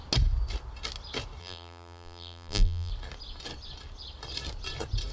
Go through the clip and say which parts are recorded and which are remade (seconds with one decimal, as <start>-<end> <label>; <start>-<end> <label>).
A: 0.0-1.4 recorded; 1.4-2.9 remade; 2.9-5.1 recorded